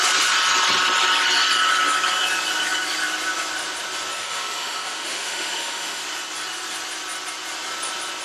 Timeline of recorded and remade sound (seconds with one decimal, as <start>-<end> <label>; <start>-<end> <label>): 0.0-4.2 recorded; 4.2-6.0 remade; 6.0-8.2 recorded